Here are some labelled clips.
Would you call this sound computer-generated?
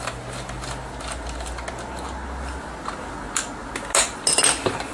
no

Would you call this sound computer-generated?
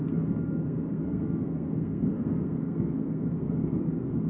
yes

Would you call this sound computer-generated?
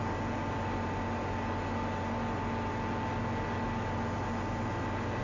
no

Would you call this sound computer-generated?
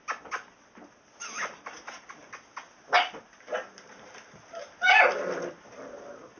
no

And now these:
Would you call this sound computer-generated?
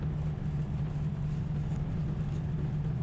no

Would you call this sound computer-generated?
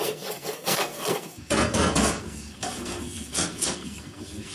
yes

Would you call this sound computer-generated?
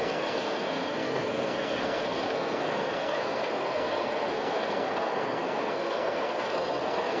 yes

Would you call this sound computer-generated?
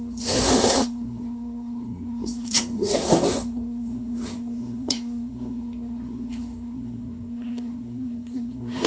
yes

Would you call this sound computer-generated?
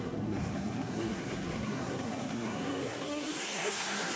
yes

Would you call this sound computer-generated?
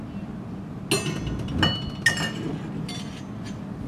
no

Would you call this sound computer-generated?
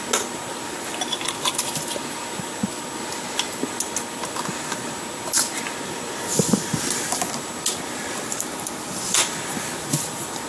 no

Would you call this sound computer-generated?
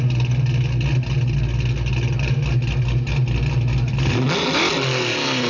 no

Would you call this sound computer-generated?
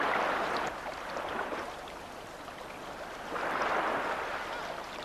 no